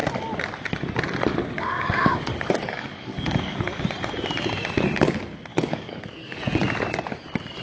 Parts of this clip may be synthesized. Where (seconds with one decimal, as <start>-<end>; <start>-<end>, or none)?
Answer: 1.3-3.8; 5.5-6.4